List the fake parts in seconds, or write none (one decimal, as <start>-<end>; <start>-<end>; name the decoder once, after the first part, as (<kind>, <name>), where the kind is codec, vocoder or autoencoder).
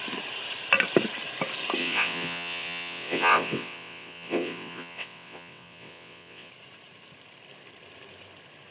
1.8-6.5 (vocoder, WaveNeXt)